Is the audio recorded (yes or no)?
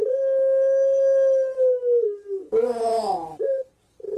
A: yes